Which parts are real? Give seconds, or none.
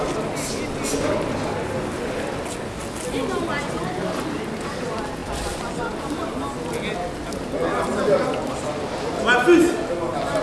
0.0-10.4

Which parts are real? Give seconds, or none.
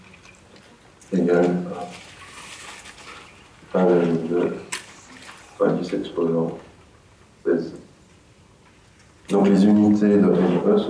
0.0-10.9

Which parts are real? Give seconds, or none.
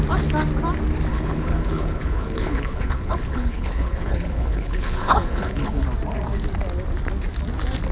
0.0-1.1; 5.8-7.9